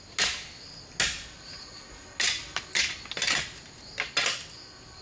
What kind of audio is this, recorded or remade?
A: recorded